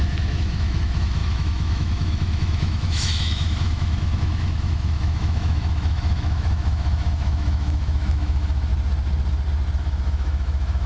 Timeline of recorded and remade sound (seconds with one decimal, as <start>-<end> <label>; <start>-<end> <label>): 0.0-8.7 remade; 8.7-9.8 recorded; 9.8-10.9 remade